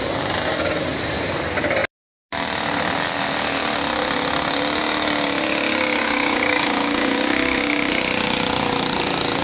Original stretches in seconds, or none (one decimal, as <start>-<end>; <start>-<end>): 0.0-6.0; 7.9-9.4